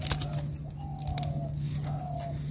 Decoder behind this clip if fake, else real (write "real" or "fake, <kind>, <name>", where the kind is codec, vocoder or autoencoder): real